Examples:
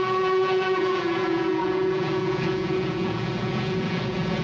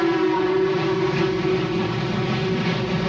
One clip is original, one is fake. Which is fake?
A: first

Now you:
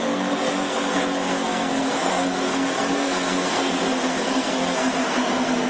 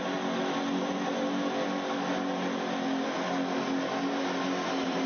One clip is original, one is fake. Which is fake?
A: first